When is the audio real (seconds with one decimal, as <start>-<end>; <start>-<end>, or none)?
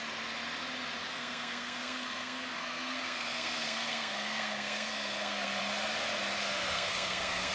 0.0-1.1; 5.6-6.4